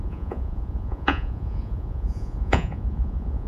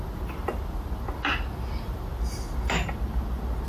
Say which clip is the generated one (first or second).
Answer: first